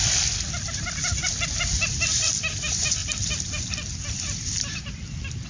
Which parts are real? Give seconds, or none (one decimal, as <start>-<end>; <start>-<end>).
0.0-5.5